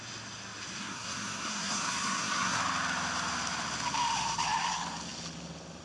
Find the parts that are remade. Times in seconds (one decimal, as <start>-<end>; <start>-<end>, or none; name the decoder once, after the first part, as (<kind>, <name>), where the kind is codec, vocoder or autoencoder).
0.8-2.6 (codec, SNAC)